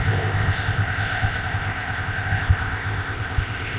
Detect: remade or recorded remade